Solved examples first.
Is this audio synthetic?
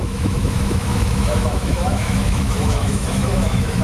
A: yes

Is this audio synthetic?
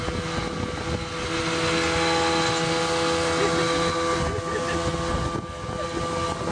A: no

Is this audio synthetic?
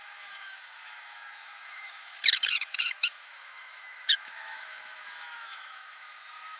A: yes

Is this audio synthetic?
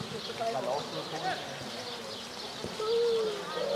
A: no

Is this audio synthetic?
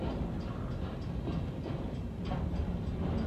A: no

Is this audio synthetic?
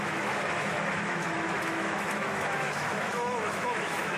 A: yes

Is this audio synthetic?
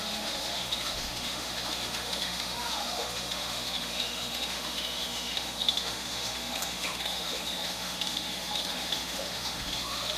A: yes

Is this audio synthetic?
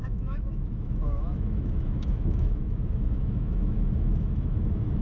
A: yes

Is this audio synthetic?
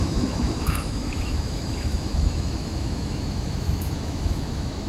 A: yes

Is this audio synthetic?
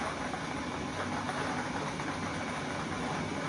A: no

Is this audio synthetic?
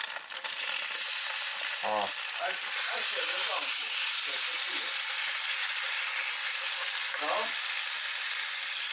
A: no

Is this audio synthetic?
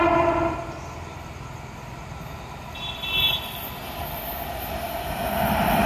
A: no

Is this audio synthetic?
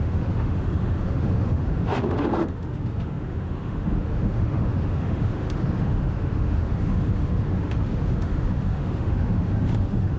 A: yes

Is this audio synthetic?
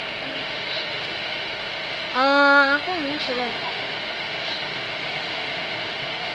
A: yes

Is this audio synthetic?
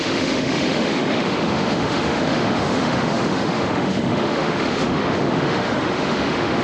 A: yes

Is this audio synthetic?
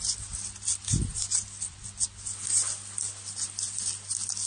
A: no